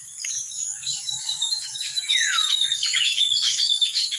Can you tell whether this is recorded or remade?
remade